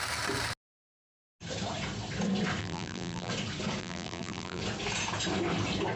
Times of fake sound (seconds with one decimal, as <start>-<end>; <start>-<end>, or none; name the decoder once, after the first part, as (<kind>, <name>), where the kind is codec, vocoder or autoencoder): 2.6-3.3 (vocoder, BigVGAN v2); 3.8-4.6